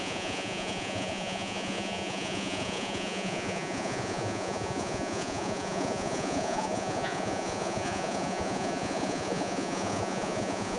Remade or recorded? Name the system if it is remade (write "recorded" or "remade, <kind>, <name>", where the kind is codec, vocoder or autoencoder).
remade, vocoder, Vocos